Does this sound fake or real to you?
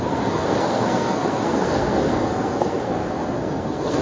fake